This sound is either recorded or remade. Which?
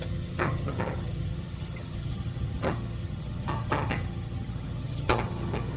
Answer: remade